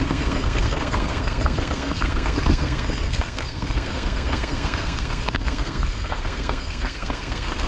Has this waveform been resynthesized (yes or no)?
yes